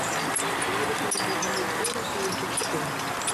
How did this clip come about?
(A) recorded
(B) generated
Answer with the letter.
A